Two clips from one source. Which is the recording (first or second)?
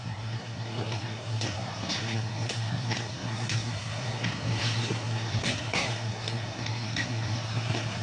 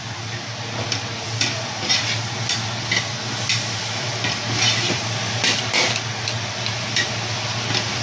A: second